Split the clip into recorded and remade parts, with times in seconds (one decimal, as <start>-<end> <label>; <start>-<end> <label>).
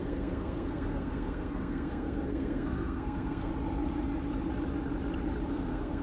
0.0-3.5 remade; 3.5-5.5 recorded; 5.5-6.0 remade